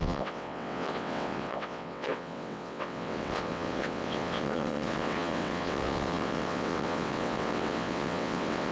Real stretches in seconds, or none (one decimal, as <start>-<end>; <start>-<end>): none